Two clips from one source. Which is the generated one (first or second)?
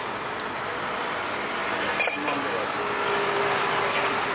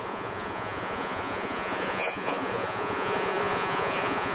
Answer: second